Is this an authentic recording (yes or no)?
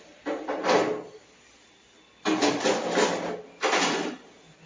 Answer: yes